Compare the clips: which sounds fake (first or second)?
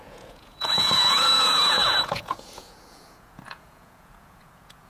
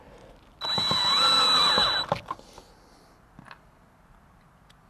first